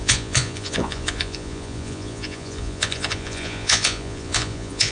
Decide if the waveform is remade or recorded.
remade